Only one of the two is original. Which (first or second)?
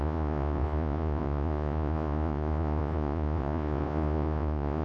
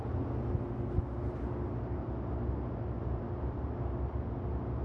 second